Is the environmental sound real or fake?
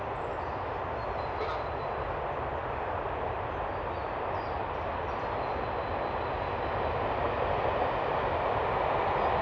real